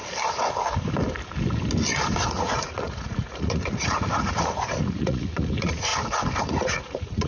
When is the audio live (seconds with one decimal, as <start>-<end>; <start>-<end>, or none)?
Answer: 0.0-2.3; 5.9-6.4